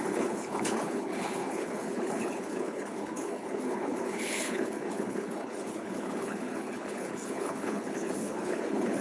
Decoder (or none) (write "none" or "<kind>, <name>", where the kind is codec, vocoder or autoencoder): codec, HILCodec